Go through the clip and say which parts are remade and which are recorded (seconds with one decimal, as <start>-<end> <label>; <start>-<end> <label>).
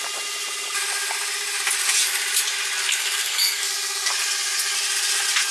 0.0-2.9 recorded; 2.9-4.1 remade; 4.1-5.5 recorded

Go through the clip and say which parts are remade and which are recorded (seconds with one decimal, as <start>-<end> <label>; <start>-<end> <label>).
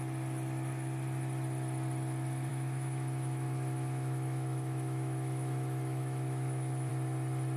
0.0-2.5 recorded; 2.5-6.9 remade; 6.9-7.6 recorded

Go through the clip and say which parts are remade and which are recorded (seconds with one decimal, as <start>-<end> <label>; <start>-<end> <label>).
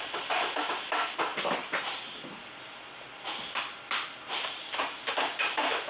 0.0-5.9 recorded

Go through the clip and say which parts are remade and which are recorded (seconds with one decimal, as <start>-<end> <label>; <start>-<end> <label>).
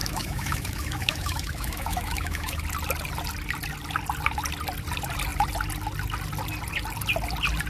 0.0-2.6 remade; 2.6-7.7 recorded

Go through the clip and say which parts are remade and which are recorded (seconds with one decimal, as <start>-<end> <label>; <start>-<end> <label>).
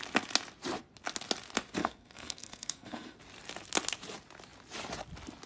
0.0-1.8 recorded; 1.8-3.2 remade; 3.2-5.5 recorded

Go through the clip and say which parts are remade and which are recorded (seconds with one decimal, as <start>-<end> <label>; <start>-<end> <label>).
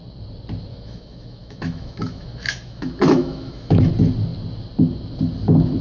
0.0-0.7 recorded; 0.7-3.9 remade; 3.9-5.8 recorded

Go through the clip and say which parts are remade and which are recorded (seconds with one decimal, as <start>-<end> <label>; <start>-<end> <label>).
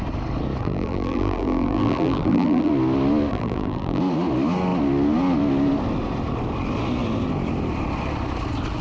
0.0-0.6 recorded; 0.6-2.7 remade; 2.7-3.3 recorded; 3.3-4.0 remade; 4.0-8.8 recorded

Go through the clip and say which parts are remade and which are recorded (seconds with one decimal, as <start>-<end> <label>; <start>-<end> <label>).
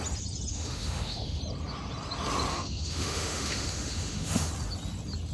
0.0-0.5 recorded; 0.5-1.4 remade; 1.4-2.5 recorded; 2.5-4.5 remade; 4.5-5.3 recorded